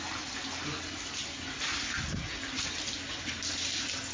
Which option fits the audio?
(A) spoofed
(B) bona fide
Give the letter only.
B